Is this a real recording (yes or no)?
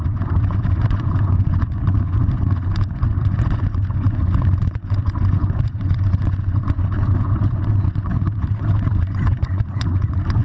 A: no